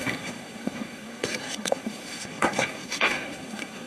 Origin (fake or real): fake